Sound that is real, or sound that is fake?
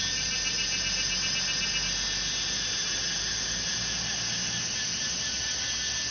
real